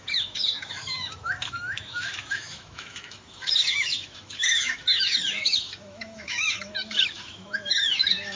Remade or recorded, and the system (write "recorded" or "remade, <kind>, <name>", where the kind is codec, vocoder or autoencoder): remade, autoencoder, DAC-VAE